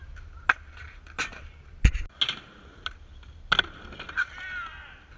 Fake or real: real